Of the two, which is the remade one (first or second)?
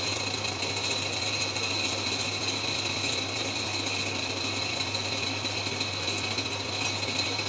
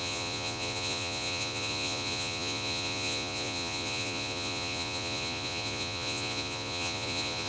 second